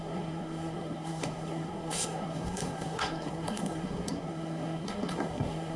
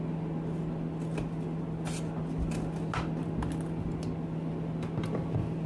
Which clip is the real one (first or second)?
second